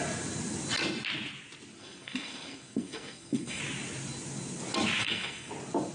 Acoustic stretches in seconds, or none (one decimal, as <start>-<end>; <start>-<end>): 0.0-1.8; 3.6-5.0; 5.5-5.9